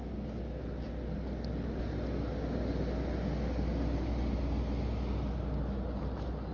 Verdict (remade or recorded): recorded